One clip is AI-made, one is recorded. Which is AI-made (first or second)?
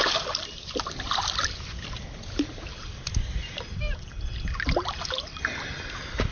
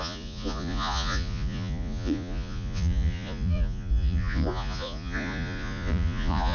second